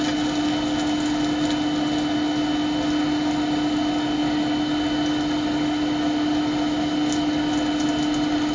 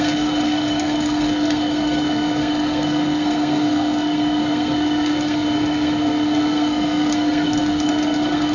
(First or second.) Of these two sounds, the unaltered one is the first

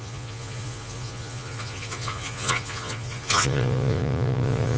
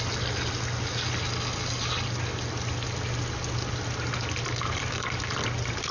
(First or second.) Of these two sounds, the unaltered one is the second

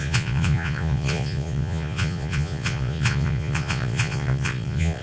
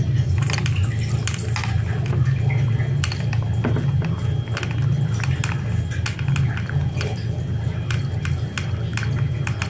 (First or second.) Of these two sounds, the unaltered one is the second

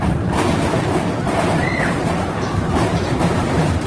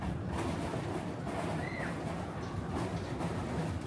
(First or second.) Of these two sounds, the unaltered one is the second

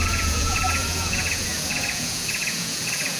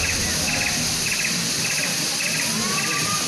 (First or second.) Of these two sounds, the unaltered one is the second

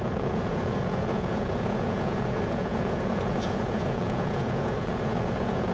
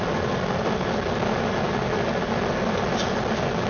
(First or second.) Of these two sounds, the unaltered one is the second